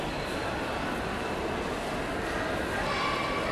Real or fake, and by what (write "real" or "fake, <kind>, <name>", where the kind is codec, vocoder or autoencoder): real